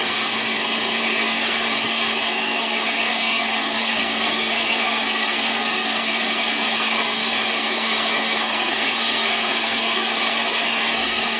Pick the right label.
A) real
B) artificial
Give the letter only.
B